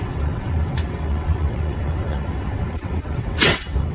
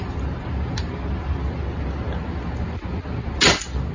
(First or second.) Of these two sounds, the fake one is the first